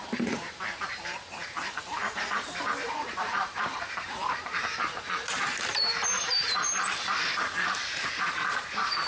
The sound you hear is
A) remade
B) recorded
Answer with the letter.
A